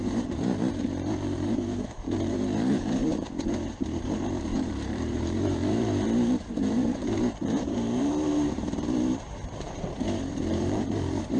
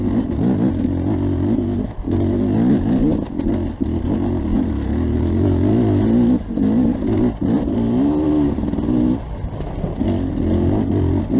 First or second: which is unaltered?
second